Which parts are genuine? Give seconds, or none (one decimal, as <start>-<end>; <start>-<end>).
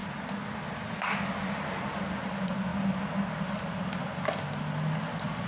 0.0-5.5